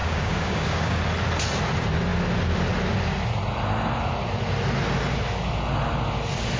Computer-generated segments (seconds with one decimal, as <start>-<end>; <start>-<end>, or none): 0.0-1.0